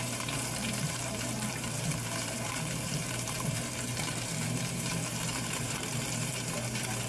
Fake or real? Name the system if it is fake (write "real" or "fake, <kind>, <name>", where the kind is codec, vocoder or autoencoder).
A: fake, vocoder, BigVGAN v2